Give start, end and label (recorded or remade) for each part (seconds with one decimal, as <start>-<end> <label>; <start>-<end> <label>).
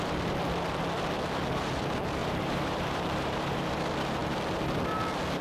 0.0-2.2 recorded; 2.2-3.8 remade; 3.8-5.4 recorded